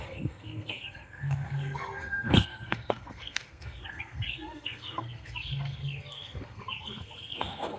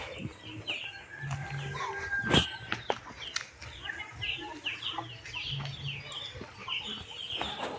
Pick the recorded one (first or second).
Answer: second